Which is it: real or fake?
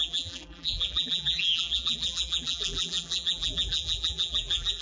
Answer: fake